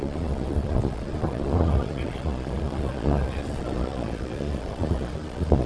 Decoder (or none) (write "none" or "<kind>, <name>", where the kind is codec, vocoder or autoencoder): vocoder, Vocos